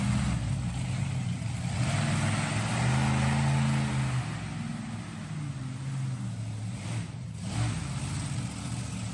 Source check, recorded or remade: recorded